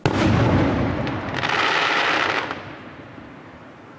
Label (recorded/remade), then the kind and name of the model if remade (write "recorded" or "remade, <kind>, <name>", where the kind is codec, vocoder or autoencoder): recorded